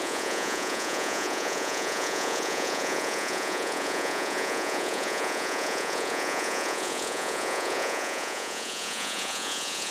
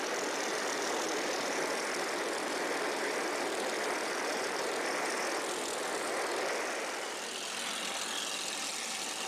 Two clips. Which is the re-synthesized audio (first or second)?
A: first